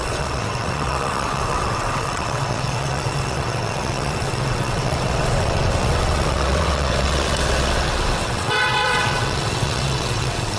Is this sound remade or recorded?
remade